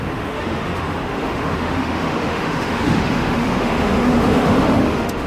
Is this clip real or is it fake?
fake